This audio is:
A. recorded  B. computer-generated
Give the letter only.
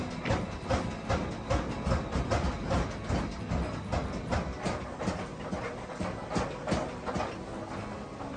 A